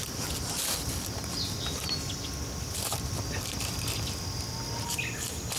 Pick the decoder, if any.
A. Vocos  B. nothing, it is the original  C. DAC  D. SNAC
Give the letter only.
B